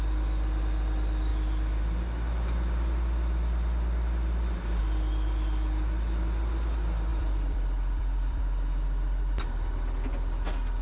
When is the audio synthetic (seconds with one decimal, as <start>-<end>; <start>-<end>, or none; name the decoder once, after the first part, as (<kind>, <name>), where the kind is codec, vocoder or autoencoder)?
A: 7.1-8.4 (vocoder, BigVGAN v2)